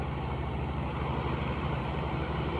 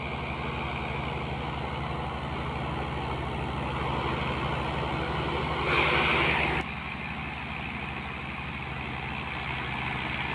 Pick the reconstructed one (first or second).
first